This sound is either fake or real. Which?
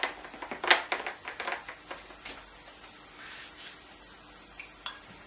real